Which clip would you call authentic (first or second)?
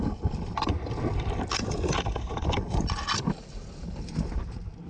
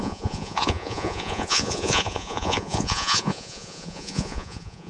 first